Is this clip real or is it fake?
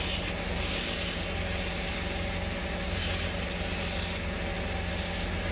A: real